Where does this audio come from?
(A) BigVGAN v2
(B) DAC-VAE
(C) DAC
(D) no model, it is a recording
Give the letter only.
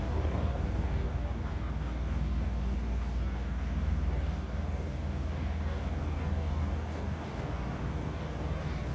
C